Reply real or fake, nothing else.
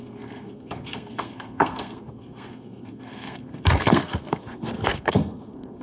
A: fake